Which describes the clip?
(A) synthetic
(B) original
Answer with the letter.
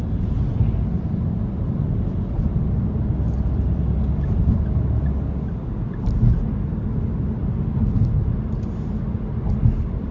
B